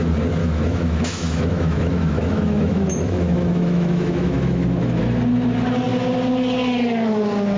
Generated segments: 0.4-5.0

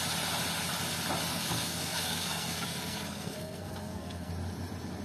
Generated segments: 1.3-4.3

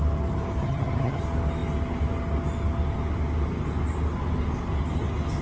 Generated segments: 0.6-1.2

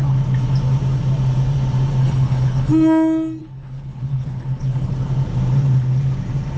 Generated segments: 2.0-2.7; 3.4-4.9

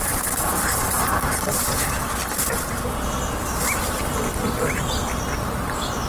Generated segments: none

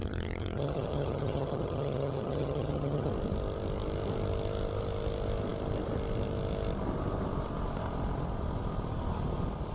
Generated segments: 0.0-3.1

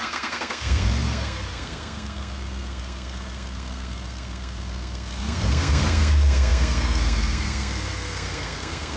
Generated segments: 0.0-9.0

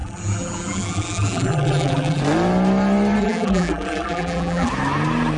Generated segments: 0.0-2.2; 3.2-4.7